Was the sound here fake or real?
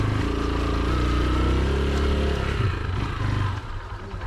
real